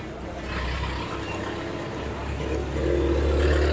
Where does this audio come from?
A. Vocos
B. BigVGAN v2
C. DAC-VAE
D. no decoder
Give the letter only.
D